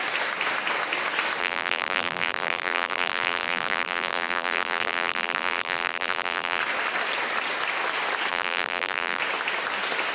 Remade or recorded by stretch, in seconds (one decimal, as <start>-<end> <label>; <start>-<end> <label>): 0.0-1.4 recorded; 1.4-6.6 remade; 6.6-8.3 recorded; 8.3-9.2 remade; 9.2-10.1 recorded